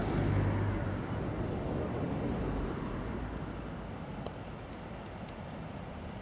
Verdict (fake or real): real